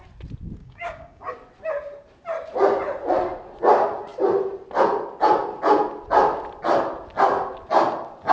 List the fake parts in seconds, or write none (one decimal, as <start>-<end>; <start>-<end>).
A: 0.6-1.3